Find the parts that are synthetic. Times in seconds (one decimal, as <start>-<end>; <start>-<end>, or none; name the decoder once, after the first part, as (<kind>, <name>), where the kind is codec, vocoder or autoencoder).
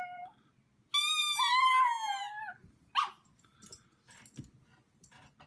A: none